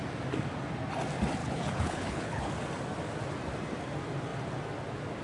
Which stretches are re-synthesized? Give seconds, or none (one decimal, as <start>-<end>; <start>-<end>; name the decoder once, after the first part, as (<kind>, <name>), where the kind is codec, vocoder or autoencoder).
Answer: 1.4-2.5 (codec, HILCodec)